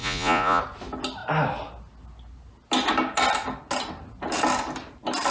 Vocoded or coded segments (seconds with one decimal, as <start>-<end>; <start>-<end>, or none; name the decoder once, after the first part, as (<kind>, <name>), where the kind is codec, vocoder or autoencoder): 0.0-0.6 (vocoder, Vocos)